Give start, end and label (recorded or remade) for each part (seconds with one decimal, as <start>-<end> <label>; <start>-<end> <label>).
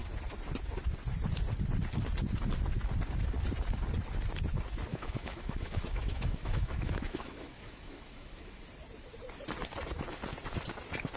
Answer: 0.0-4.9 recorded; 4.9-8.6 remade; 8.6-11.2 recorded